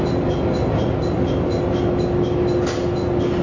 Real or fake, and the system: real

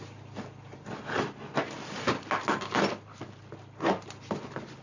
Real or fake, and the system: real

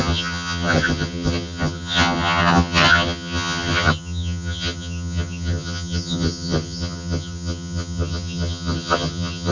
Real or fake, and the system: fake, vocoder, HiFi-GAN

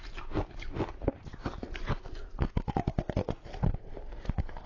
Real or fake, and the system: real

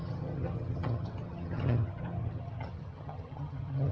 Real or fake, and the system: fake, vocoder, HiFi-GAN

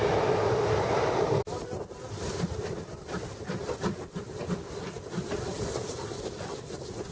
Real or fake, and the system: real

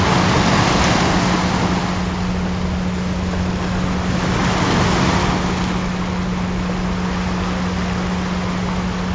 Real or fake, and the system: real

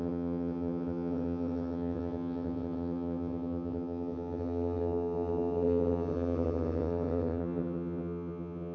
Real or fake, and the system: fake, vocoder, HiFi-GAN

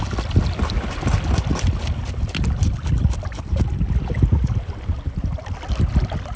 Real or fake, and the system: real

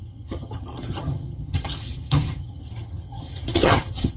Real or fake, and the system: fake, vocoder, HiFi-GAN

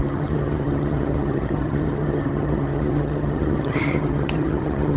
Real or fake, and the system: fake, vocoder, HiFi-GAN